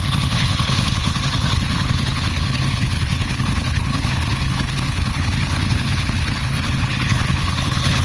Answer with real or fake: fake